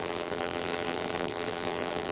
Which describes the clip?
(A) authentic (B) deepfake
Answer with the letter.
B